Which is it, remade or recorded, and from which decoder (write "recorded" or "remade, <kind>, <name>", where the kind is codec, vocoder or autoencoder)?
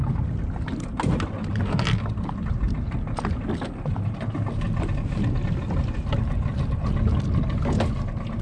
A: recorded